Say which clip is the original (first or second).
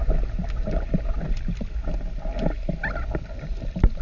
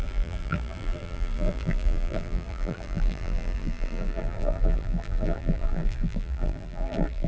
first